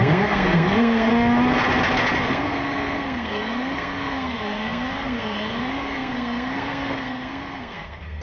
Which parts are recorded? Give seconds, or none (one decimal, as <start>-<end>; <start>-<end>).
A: 1.1-2.2